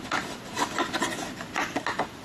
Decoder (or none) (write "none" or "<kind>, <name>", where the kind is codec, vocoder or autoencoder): none